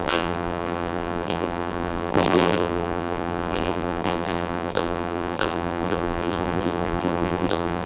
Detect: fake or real fake